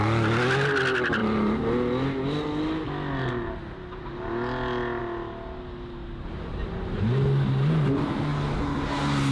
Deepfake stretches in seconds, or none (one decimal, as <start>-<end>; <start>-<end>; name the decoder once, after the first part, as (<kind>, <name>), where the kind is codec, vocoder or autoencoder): none